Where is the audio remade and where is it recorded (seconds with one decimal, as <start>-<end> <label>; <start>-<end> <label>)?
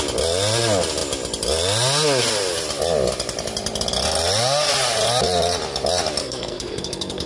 0.0-6.2 recorded; 6.2-7.3 remade